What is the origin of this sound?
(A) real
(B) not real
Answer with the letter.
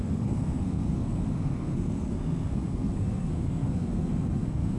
B